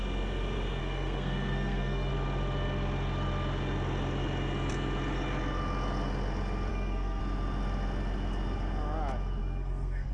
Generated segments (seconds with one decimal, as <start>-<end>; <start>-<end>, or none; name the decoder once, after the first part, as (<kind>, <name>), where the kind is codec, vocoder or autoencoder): 0.8-2.1 (codec, SNAC); 6.7-7.2; 9.4-10.1